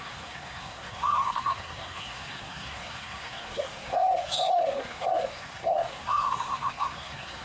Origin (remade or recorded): remade